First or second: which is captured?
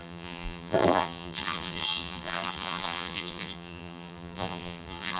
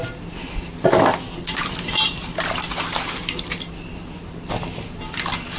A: second